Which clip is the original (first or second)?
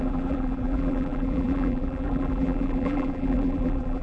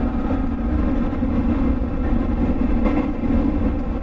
second